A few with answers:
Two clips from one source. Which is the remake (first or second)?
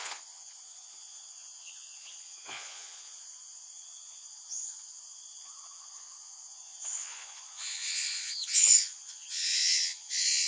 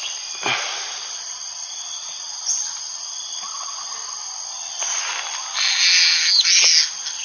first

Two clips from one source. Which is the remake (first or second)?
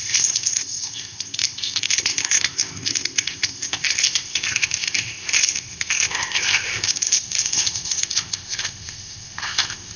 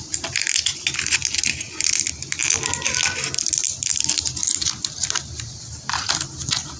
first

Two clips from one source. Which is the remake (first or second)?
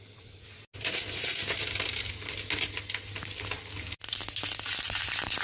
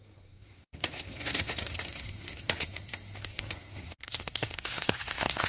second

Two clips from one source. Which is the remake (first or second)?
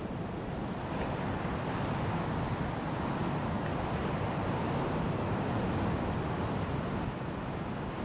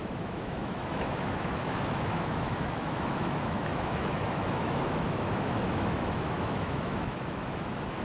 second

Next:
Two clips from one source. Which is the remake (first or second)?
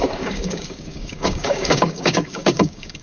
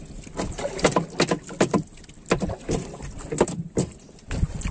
first